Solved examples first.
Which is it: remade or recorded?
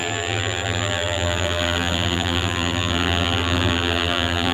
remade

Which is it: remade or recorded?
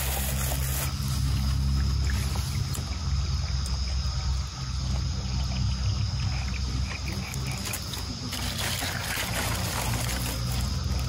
recorded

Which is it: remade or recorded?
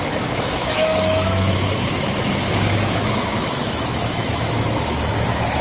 remade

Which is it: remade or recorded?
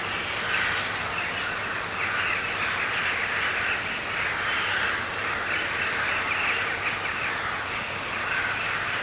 recorded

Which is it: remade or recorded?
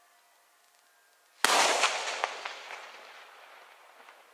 recorded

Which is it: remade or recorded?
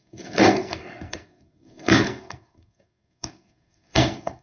remade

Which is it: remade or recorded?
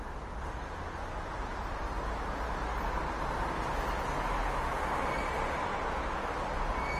recorded